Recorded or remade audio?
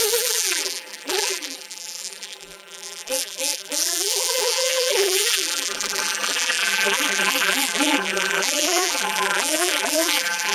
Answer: remade